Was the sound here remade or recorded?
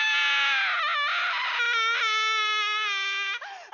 recorded